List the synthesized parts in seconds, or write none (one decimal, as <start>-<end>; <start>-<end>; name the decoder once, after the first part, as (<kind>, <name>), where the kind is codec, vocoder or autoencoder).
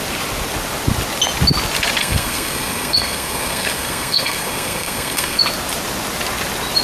2.0-5.4 (codec, SNAC)